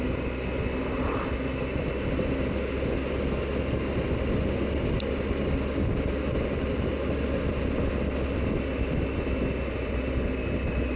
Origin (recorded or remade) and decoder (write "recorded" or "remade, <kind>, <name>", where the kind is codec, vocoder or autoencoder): recorded